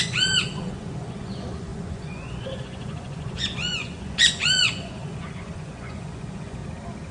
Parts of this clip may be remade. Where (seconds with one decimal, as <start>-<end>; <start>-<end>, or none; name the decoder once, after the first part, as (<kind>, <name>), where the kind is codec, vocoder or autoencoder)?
0.0-6.6 (vocoder, Vocos)